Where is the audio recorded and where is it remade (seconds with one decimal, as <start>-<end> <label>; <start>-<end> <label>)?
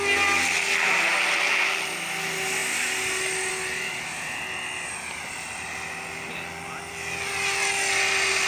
0.0-8.5 recorded